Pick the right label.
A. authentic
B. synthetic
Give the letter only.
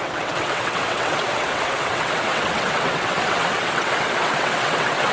B